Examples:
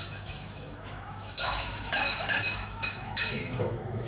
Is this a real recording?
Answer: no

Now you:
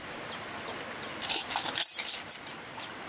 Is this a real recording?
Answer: yes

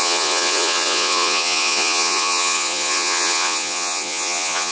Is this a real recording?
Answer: no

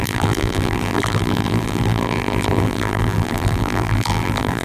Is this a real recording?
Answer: no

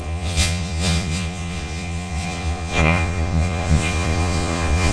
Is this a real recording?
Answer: no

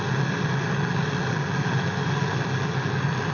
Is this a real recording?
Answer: yes